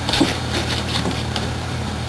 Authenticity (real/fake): fake